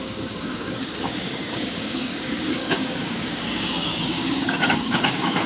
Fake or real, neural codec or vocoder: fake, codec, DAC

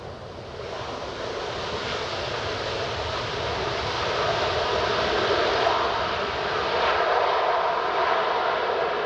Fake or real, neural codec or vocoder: real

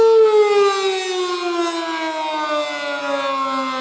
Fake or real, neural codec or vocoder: real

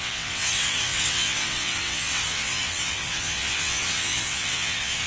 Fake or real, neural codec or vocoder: fake, vocoder, WaveNeXt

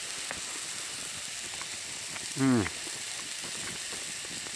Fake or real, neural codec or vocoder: real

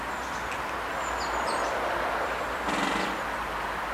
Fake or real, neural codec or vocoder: real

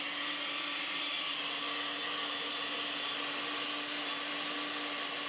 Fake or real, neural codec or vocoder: real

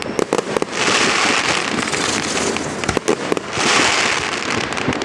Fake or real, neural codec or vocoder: real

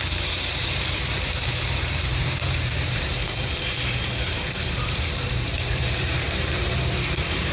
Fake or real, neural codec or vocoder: fake, vocoder, BigVGAN v2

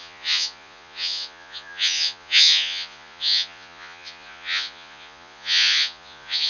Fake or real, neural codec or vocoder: fake, vocoder, Vocos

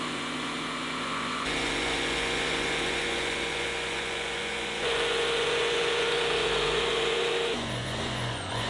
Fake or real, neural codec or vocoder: fake, vocoder, Vocos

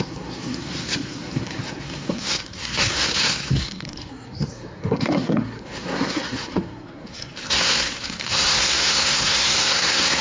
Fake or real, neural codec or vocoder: fake, codec, SNAC